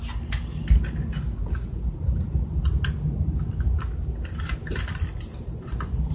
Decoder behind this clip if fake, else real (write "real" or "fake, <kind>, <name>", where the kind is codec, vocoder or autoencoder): real